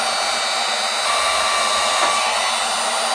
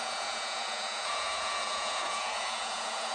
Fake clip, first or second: second